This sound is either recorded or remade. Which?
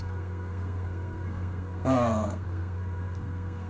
remade